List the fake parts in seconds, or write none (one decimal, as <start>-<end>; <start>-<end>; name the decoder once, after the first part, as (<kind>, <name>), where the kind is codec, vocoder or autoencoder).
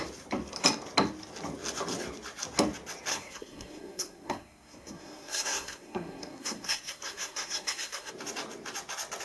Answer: 3.1-8.1 (codec, SNAC)